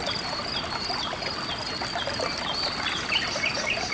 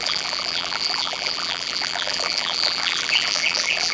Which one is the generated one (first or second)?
second